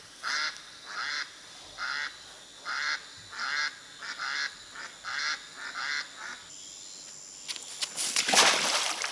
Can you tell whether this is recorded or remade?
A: recorded